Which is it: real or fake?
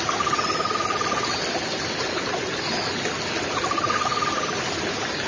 real